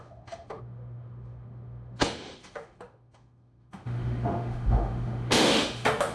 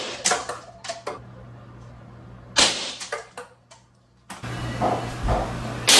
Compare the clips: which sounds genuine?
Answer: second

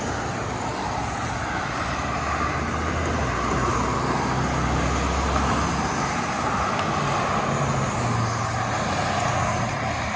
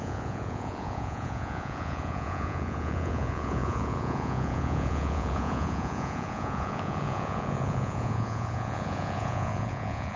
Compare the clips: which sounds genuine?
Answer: first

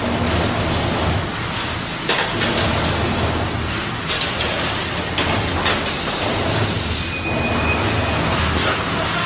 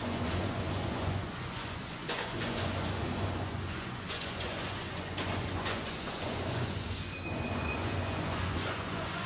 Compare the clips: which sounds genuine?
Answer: first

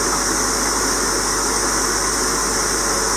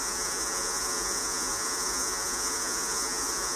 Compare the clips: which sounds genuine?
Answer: first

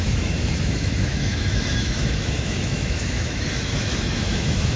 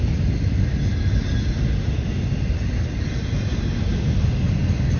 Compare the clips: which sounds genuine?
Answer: second